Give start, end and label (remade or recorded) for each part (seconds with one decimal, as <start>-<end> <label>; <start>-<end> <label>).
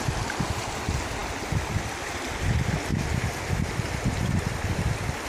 0.0-5.3 recorded